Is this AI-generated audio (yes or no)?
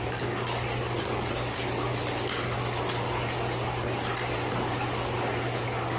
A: no